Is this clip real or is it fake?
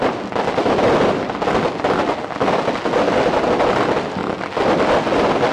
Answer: real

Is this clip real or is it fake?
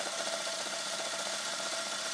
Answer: real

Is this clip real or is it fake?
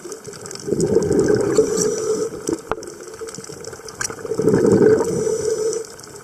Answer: real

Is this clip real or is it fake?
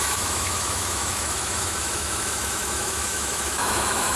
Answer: fake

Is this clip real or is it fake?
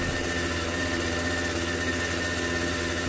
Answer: real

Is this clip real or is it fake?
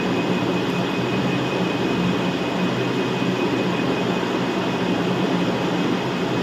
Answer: real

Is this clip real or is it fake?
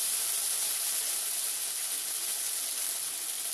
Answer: real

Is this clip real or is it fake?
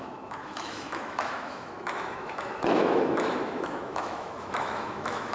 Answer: fake